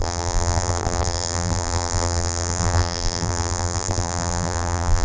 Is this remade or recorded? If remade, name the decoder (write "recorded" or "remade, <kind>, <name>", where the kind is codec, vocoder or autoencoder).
remade, vocoder, BigVGAN v2